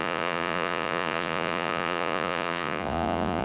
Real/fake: fake